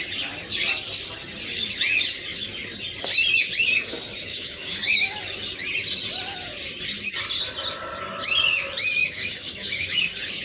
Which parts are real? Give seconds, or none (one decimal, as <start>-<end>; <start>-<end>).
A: 0.0-4.3; 5.2-9.0